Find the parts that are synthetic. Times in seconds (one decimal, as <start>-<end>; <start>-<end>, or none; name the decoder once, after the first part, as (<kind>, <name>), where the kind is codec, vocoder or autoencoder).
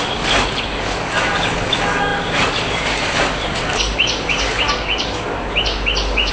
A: 0.0-6.3 (codec, DAC)